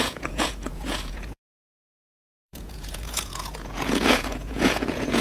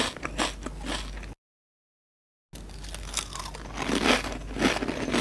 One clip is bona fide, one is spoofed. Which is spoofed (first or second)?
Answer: first